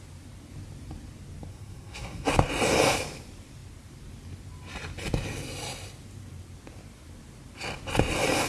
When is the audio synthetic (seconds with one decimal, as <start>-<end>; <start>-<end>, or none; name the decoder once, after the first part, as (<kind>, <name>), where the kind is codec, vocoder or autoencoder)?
1.5-2.3 (codec, SNAC)

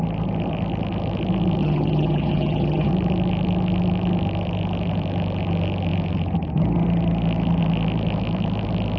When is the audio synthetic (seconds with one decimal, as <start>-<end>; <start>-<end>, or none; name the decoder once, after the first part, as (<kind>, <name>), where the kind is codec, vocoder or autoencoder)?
1.6-2.9 (vocoder, HiFi-GAN)

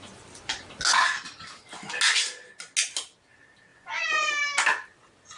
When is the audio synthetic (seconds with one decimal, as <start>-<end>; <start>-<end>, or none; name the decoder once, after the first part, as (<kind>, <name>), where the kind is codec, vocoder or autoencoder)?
3.7-4.3 (vocoder, Vocos)

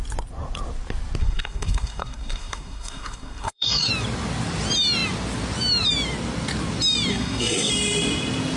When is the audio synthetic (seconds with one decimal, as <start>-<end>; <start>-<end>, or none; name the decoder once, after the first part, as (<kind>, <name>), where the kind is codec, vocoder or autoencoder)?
1.2-3.9 (codec, SNAC); 7.1-7.7

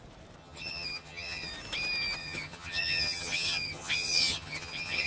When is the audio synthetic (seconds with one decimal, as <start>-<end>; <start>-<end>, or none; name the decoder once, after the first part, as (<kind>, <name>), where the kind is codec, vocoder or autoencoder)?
0.4-1.5 (vocoder, HiFi-GAN); 2.2-5.1

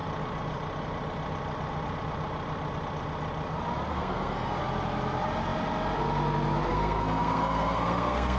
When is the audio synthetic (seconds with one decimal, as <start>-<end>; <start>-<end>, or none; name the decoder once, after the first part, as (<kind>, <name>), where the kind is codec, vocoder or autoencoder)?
3.9-4.6 (codec, SNAC); 6.7-8.4